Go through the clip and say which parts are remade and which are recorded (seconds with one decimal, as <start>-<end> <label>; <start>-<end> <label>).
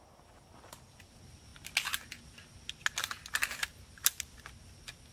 0.0-5.1 recorded